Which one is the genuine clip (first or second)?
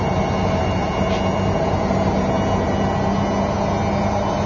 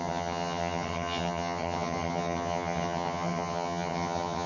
first